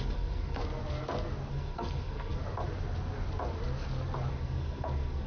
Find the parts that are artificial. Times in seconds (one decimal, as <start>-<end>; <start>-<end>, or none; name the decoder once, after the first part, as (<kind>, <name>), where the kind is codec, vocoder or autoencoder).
0.0-0.6 (codec, SNAC); 1.5-2.4; 4.3-5.3